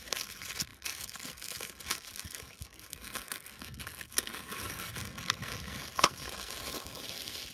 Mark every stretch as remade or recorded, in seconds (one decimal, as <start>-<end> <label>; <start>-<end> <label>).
0.0-7.5 remade